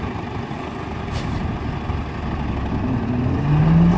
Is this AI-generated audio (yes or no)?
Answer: no